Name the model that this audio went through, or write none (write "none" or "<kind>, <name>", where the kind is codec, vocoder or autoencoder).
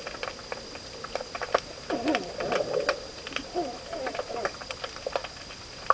none